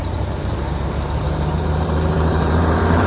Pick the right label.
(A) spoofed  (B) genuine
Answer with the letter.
A